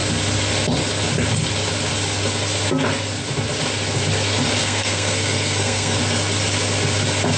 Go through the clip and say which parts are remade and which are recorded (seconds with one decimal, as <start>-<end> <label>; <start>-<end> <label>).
0.0-4.6 recorded; 4.6-6.0 remade; 6.0-7.4 recorded